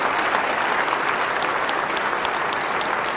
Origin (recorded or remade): recorded